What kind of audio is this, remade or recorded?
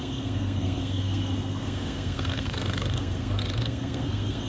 remade